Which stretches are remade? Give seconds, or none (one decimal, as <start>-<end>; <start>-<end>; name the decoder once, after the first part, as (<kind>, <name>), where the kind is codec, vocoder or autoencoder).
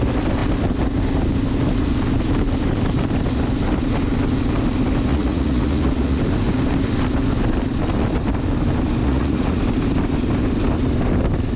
5.1-6.2 (vocoder, Vocos); 9.0-9.6